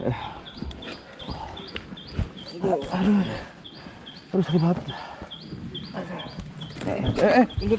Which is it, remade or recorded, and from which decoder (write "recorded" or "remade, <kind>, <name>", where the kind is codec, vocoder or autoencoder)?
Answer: recorded